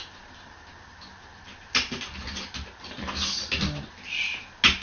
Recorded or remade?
recorded